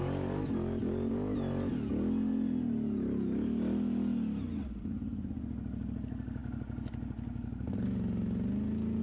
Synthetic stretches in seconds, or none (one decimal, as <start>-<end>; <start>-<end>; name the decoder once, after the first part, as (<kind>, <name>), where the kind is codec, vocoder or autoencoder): none